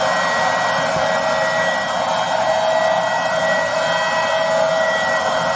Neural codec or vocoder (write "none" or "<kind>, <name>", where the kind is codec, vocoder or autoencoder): none